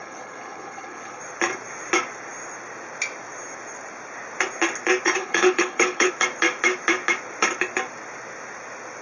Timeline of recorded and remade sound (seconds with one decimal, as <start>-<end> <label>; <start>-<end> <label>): 0.0-1.2 remade; 1.2-5.2 recorded; 5.2-6.1 remade; 6.1-9.0 recorded